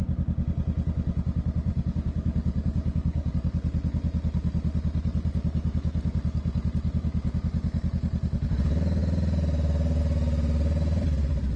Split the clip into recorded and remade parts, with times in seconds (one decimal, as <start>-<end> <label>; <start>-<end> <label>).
0.0-1.7 recorded; 1.7-3.3 remade; 3.3-11.6 recorded